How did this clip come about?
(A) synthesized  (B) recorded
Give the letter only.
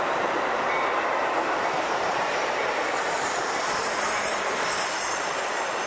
A